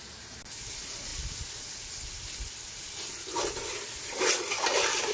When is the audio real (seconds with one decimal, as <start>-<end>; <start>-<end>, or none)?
0.0-5.1

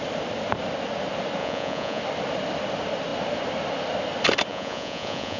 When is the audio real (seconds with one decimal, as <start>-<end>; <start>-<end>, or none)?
0.0-1.4; 2.0-4.5

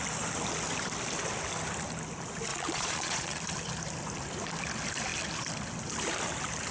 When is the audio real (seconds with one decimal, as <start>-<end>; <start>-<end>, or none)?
0.0-2.5; 3.4-6.7

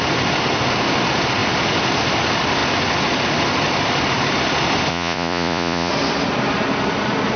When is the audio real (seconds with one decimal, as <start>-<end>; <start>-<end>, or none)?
0.0-4.9; 5.9-7.4

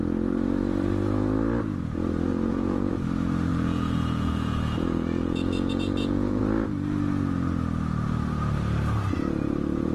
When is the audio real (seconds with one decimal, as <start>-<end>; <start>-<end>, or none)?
0.0-2.3; 2.9-3.5; 6.4-9.9

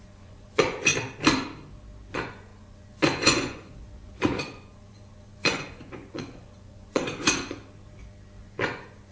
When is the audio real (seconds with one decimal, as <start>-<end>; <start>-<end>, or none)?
0.9-2.1; 7.6-8.4